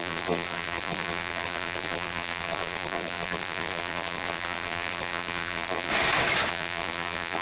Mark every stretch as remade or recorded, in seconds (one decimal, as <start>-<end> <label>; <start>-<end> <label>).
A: 0.0-5.9 remade; 5.9-6.5 recorded; 6.5-7.4 remade